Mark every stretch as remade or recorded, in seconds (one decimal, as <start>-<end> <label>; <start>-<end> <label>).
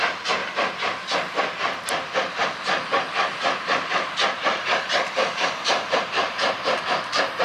0.0-0.4 remade; 0.4-4.8 recorded; 4.8-7.4 remade